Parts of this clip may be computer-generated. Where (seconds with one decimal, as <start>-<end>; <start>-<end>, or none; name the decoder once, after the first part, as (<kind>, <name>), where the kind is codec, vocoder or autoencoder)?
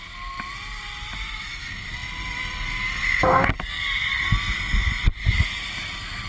none